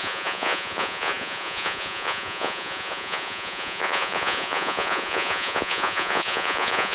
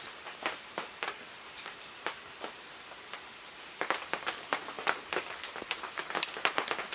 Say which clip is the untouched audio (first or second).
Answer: second